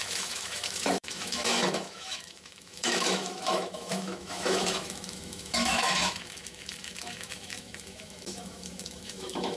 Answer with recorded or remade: remade